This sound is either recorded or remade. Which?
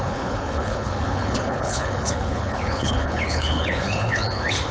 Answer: remade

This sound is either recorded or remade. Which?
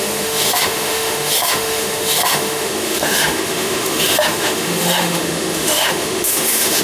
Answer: remade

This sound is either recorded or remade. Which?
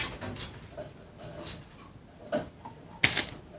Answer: recorded